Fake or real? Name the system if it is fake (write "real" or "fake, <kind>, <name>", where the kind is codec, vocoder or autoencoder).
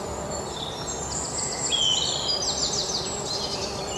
real